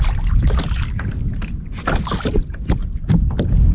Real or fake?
real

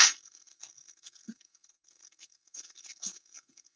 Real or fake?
fake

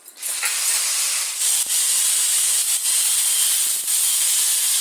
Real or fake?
real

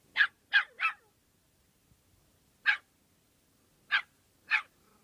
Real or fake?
real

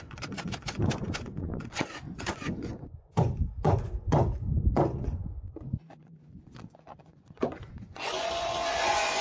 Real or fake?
fake